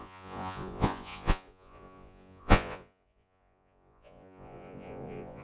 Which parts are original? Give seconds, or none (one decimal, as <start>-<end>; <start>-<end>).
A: none